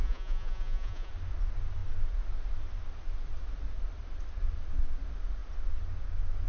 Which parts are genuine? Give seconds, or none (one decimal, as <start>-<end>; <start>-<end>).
1.1-6.5